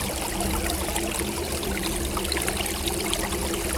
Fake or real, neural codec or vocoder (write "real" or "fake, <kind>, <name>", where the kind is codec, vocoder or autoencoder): real